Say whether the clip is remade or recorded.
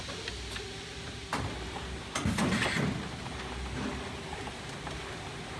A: recorded